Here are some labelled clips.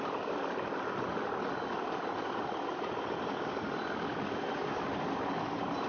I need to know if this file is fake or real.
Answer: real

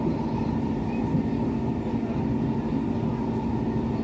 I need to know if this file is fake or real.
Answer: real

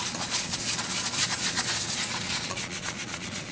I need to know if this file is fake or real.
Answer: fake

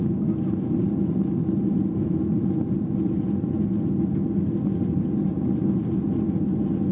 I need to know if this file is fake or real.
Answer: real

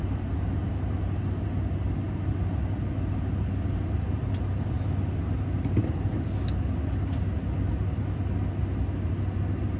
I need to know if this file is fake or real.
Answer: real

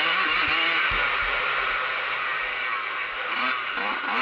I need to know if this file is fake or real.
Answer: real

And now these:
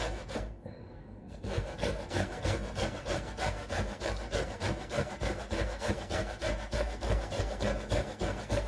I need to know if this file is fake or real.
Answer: fake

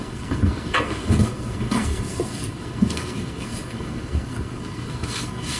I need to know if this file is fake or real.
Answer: fake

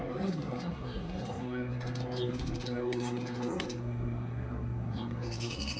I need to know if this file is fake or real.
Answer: fake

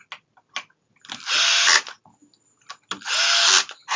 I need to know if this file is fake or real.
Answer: real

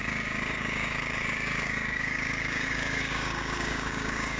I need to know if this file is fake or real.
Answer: fake